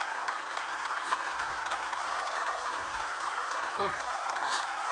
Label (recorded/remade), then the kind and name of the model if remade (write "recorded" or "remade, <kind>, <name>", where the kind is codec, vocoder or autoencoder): remade, codec, SNAC